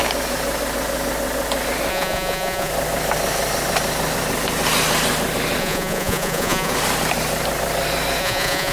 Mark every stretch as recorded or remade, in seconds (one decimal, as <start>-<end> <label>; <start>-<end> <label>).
0.0-1.9 recorded; 1.9-2.7 remade; 2.7-5.6 recorded; 5.6-6.7 remade; 6.7-8.2 recorded; 8.2-8.7 remade